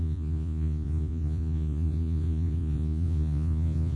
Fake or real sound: fake